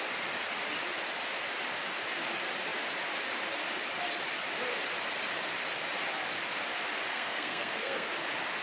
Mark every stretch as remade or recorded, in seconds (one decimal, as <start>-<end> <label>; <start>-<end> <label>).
0.0-7.1 recorded; 7.1-8.1 remade; 8.1-8.6 recorded